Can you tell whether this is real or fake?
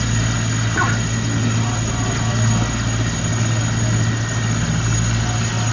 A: real